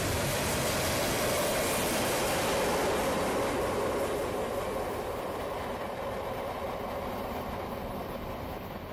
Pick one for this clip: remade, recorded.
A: recorded